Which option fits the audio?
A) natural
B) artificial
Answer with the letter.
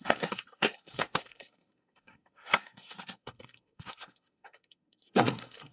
B